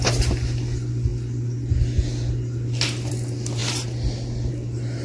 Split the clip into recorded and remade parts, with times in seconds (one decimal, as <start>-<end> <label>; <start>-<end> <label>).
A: 0.0-5.0 recorded